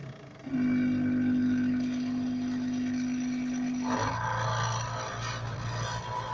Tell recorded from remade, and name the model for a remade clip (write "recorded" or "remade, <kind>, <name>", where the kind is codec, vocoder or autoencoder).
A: recorded